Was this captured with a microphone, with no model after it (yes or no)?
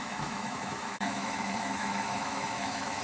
no